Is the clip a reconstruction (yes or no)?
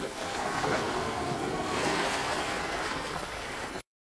yes